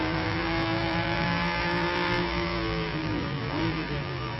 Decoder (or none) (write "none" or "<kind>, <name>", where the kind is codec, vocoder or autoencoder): vocoder, BigVGAN v2